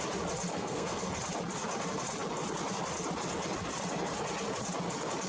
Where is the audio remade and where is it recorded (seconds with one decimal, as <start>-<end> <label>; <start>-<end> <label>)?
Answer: 0.0-0.5 recorded; 0.5-1.1 remade; 1.1-5.3 recorded